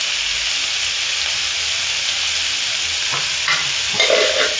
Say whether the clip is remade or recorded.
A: recorded